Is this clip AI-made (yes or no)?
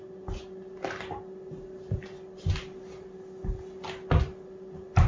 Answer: no